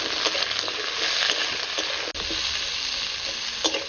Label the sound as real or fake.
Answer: real